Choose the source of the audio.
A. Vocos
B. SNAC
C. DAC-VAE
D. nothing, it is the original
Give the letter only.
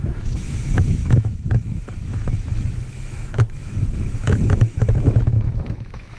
C